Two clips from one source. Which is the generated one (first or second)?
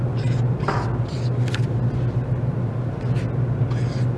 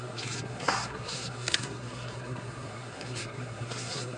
second